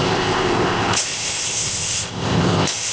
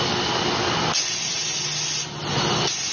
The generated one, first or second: first